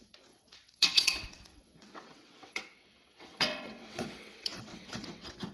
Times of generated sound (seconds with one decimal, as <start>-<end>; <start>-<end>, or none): 0.0-5.5